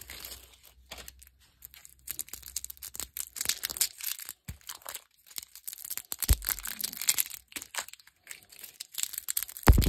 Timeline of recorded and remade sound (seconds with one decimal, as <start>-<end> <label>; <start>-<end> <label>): 0.0-9.9 recorded